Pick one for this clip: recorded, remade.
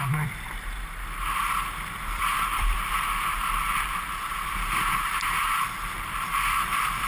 remade